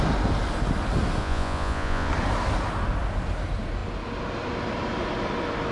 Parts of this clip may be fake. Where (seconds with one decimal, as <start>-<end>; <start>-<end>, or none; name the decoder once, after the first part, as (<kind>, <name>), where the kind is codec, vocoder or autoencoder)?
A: 1.2-2.1 (vocoder, Vocos)